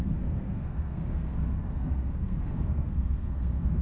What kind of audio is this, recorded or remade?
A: remade